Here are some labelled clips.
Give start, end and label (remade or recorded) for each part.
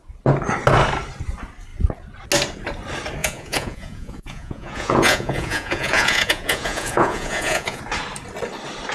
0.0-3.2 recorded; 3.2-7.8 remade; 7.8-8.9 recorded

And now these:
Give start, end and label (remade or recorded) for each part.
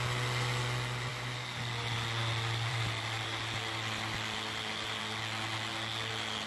0.0-1.1 recorded; 1.1-5.0 remade; 5.0-6.5 recorded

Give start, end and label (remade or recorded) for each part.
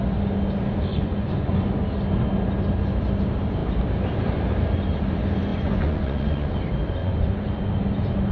0.0-0.9 recorded; 0.9-1.5 remade; 1.5-5.5 recorded; 5.5-6.6 remade; 6.6-7.0 recorded; 7.0-7.7 remade; 7.7-8.3 recorded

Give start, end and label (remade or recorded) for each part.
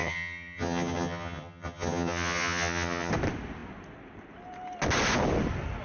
0.0-3.1 remade; 3.1-5.8 recorded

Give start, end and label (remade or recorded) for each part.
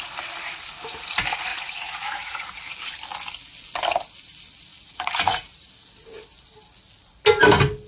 0.0-1.5 recorded; 1.5-2.6 remade; 2.6-4.7 recorded; 4.7-5.7 remade; 5.7-7.9 recorded